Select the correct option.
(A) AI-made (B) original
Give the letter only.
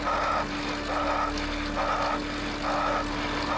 B